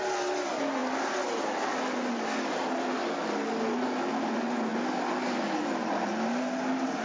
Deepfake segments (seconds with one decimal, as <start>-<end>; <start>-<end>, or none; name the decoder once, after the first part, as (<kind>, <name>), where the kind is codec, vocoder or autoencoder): none